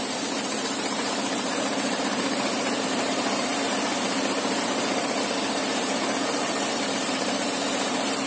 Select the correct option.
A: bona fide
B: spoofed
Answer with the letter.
B